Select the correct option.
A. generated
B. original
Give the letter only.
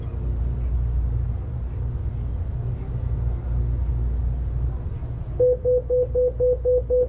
B